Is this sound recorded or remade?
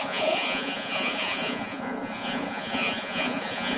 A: remade